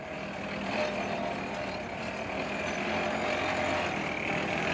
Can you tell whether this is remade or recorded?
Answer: recorded